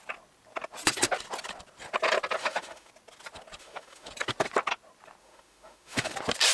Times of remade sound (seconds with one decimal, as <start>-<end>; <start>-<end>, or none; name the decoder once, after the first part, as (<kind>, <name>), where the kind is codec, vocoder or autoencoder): 2.4-2.9 (autoencoder, DAC-VAE); 3.6-4.1; 5.2-6.1